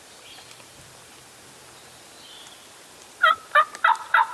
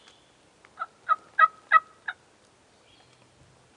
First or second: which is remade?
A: first